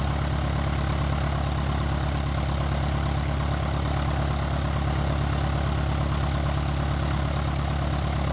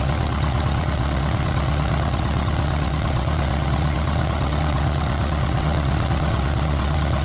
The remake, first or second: second